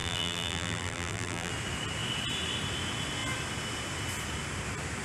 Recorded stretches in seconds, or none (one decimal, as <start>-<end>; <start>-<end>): 1.5-5.0